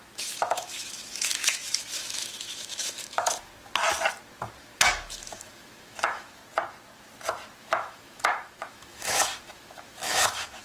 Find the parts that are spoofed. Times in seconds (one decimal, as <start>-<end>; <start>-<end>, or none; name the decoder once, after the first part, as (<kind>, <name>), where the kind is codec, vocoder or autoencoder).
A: 0.0-3.5 (autoencoder, DAC-VAE); 4.9-6.4; 7.6-10.6